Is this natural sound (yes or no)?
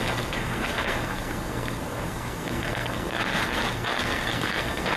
no